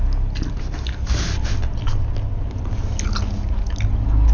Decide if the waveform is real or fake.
real